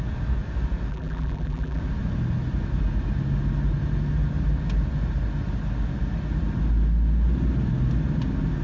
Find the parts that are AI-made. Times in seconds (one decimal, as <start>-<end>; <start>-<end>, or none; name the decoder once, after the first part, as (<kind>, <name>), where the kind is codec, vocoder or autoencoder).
0.9-1.8 (vocoder, BigVGAN v2)